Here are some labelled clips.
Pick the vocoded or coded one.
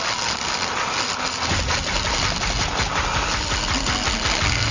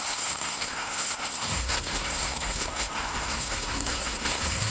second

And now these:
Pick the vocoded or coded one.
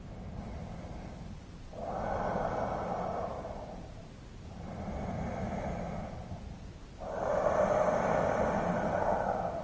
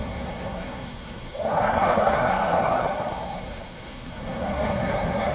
second